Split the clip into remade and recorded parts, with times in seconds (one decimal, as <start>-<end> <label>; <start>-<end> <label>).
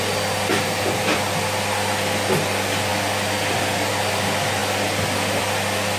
0.0-6.0 remade